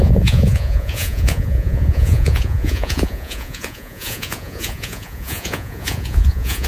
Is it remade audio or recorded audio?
remade